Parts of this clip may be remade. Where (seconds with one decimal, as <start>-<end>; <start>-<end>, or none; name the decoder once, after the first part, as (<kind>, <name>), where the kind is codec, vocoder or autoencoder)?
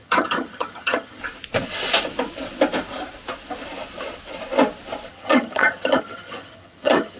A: 0.0-1.2 (vocoder, HiFi-GAN); 5.1-7.2